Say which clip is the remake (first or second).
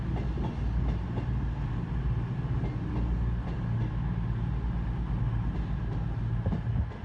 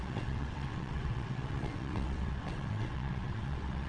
second